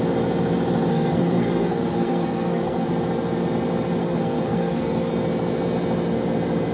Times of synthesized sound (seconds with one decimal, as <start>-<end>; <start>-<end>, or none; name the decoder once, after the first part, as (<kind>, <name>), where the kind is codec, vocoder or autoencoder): 0.9-2.9 (codec, SNAC); 4.0-5.1